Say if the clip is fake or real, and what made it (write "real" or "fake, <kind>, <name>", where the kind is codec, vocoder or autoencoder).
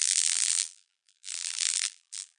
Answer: fake, vocoder, BigVGAN v2